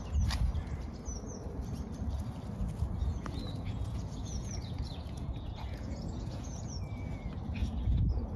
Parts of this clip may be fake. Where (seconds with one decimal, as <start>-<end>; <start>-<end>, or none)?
3.0-6.8; 7.6-8.4